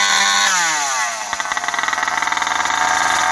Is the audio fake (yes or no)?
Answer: no